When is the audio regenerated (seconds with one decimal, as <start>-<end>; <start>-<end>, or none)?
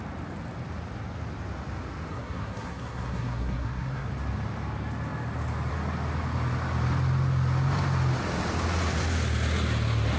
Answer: 2.1-4.1